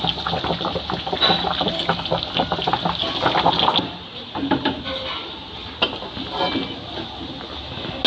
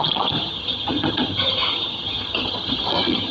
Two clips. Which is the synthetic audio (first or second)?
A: second